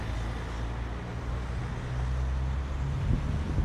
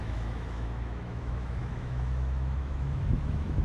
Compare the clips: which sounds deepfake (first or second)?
second